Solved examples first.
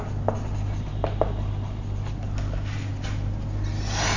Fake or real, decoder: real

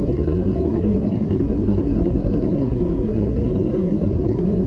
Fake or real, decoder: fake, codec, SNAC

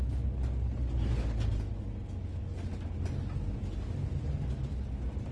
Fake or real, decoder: real